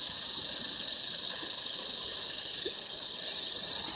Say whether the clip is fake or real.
real